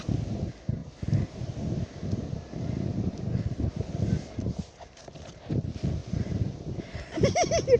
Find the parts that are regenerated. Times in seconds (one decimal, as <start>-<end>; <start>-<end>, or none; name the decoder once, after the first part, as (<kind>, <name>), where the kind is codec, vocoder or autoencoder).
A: 6.0-6.8 (vocoder, BigVGAN v2)